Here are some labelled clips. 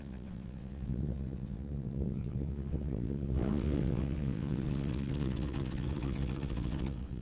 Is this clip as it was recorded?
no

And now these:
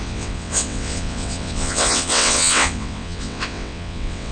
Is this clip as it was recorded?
no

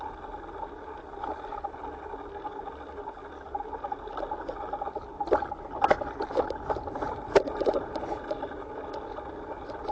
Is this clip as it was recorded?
yes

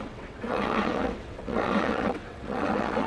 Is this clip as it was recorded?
no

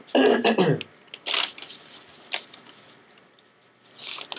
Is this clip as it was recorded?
yes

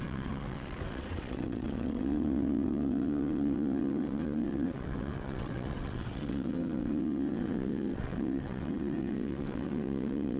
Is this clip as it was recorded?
no